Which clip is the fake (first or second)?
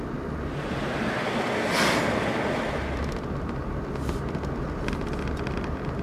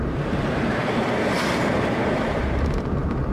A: second